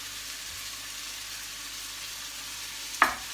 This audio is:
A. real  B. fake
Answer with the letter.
A